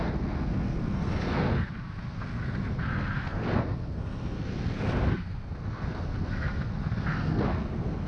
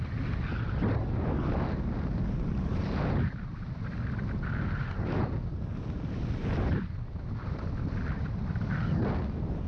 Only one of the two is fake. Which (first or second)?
first